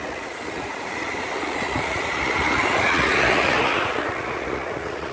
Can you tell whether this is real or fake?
fake